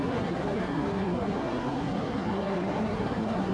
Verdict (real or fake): fake